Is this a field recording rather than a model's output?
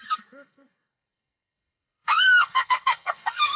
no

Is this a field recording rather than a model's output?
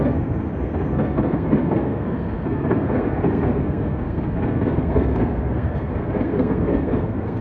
no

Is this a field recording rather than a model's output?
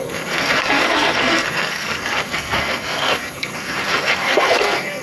no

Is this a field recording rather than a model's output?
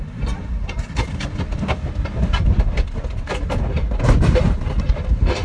yes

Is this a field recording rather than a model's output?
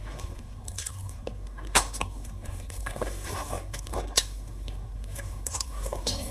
no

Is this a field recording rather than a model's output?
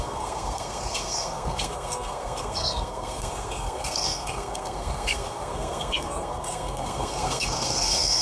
no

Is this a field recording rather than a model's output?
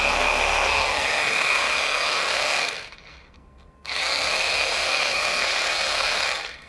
no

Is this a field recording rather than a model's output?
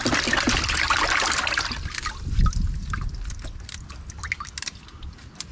yes